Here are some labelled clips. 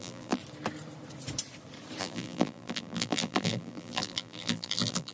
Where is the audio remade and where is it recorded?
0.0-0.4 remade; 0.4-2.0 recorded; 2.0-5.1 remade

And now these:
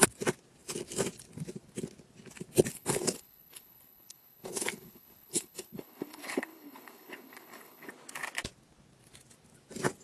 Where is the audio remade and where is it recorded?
0.0-2.7 recorded; 2.7-7.9 remade; 7.9-10.0 recorded

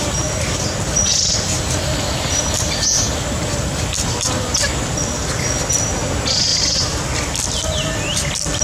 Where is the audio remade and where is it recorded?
0.0-6.5 recorded; 6.5-8.6 remade

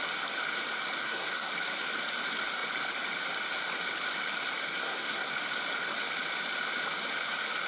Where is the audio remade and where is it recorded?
0.0-1.0 recorded; 1.0-1.5 remade; 1.5-4.7 recorded; 4.7-5.3 remade; 5.3-7.7 recorded

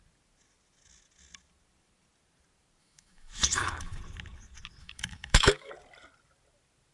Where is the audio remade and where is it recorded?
0.0-2.8 recorded; 2.8-4.0 remade; 4.0-4.8 recorded; 4.8-5.7 remade; 5.7-6.9 recorded

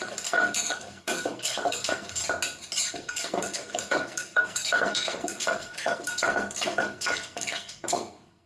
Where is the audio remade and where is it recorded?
0.0-2.2 remade; 2.2-2.9 recorded; 2.9-8.5 remade

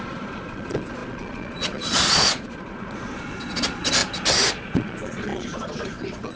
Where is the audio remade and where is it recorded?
0.0-4.0 remade; 4.0-4.5 recorded; 4.5-6.4 remade